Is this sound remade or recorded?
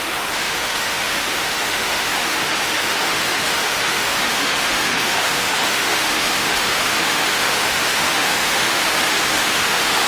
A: remade